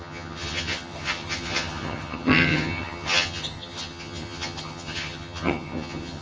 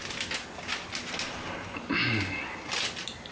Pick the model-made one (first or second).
first